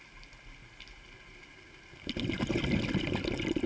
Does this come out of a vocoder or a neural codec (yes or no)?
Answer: no